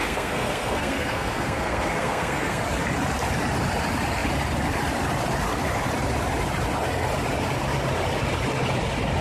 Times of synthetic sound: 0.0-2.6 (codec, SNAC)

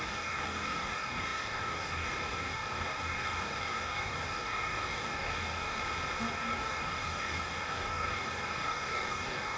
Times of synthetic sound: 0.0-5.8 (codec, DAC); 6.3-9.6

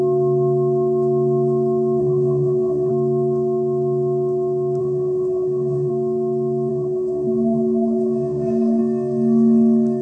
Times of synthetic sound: 2.0-2.9 (autoencoder, DAC-VAE); 4.8-5.9; 6.7-8.8

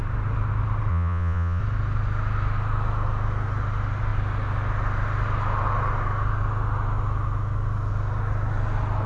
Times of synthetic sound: 0.9-1.6 (vocoder, Vocos)